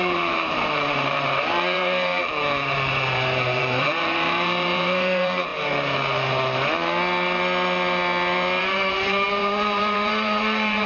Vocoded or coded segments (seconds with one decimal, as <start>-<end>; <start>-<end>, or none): 0.0-5.5; 8.6-10.9